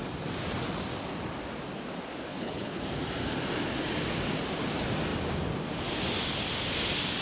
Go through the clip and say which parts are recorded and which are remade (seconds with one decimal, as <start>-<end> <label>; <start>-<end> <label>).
0.0-2.3 recorded; 2.3-2.8 remade; 2.8-7.2 recorded